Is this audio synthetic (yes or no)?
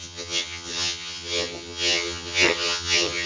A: yes